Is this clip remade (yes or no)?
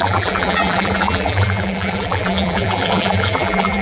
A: yes